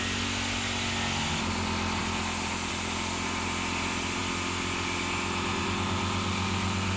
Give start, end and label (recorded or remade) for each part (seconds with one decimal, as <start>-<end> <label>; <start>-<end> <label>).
0.0-7.0 recorded